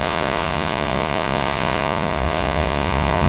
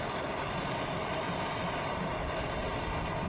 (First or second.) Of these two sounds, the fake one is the first